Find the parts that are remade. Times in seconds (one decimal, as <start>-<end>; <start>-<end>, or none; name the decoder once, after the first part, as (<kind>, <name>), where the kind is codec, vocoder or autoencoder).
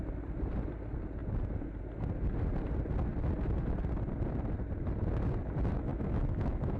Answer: 5.9-6.8 (autoencoder, DAC-VAE)